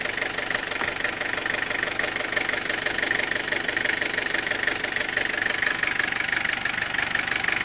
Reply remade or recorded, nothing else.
recorded